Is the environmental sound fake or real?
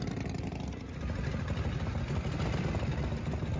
real